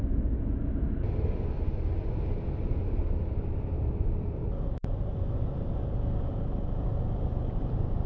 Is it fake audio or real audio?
real